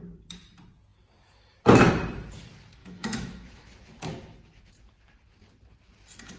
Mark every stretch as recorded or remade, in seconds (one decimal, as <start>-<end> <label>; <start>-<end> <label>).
0.0-2.8 recorded; 2.8-3.7 remade; 3.7-6.4 recorded